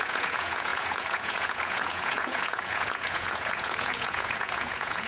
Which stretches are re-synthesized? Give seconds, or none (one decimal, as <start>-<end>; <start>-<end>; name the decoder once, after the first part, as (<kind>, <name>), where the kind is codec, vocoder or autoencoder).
0.0-5.1 (vocoder, Vocos)